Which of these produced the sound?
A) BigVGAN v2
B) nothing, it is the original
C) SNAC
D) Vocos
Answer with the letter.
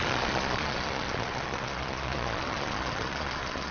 D